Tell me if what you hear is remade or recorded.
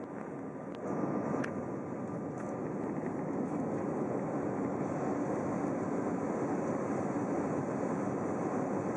recorded